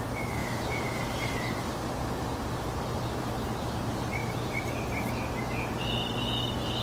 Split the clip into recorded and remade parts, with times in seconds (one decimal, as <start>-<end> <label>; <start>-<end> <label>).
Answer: 0.0-6.8 recorded